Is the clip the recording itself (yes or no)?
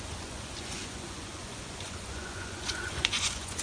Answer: no